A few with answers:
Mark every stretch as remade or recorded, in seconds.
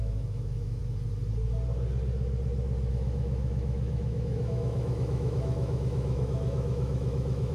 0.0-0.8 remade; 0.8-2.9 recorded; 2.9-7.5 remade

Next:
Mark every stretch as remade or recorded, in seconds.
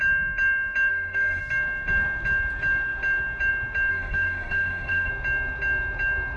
0.0-0.9 recorded; 0.9-1.4 remade; 1.4-3.9 recorded; 3.9-5.1 remade; 5.1-6.4 recorded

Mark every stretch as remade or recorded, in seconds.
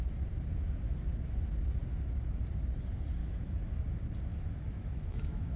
0.0-3.2 recorded; 3.2-3.8 remade; 3.8-4.3 recorded; 4.3-5.6 remade